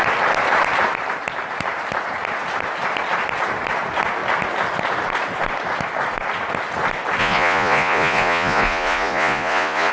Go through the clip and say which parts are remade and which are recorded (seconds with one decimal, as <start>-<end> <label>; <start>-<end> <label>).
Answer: 0.0-7.2 recorded; 7.2-9.9 remade